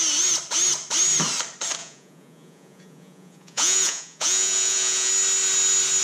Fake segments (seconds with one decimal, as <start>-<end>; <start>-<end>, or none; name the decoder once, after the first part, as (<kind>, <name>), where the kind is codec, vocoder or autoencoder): 1.8-5.1 (vocoder, Vocos)